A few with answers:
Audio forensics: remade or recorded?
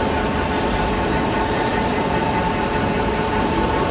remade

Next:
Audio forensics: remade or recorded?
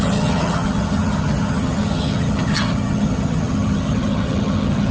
remade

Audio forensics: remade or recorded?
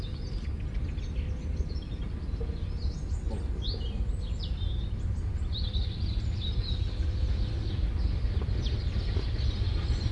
recorded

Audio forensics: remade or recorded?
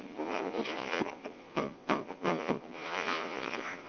remade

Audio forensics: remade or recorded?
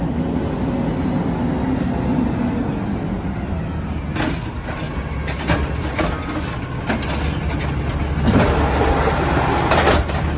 recorded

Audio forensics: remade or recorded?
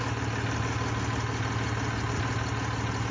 recorded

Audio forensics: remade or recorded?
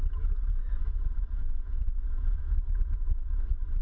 remade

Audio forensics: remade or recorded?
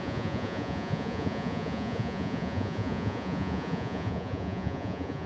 remade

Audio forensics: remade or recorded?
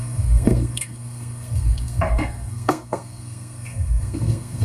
remade